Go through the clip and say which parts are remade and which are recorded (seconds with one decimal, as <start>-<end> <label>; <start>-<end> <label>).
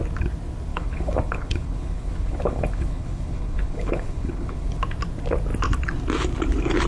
0.0-0.7 recorded; 0.7-4.8 remade; 4.8-6.9 recorded